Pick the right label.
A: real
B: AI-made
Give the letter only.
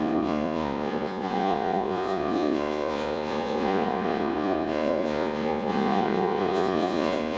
B